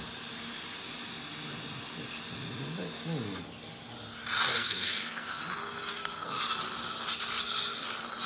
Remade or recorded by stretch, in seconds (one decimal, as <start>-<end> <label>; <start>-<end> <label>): 0.0-4.5 recorded; 4.5-5.4 remade; 5.4-5.9 recorded; 5.9-6.4 remade; 6.4-8.3 recorded